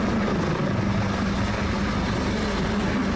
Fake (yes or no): no